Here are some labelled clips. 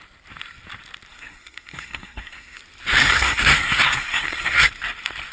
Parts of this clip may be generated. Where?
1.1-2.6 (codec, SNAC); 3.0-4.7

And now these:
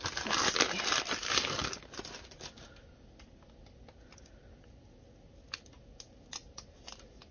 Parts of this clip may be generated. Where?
none

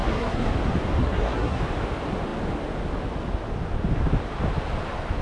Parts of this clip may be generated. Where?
0.0-0.5 (codec, SNAC); 1.0-1.6

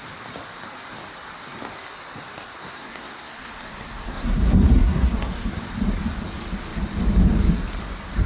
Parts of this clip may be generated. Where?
2.6-5.6 (codec, SNAC)

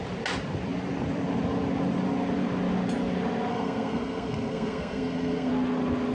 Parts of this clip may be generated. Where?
3.5-5.5 (codec, SNAC)